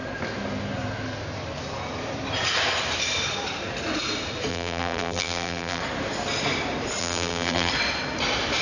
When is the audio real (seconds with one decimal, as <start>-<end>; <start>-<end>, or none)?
0.0-4.5; 5.8-7.0; 7.7-8.6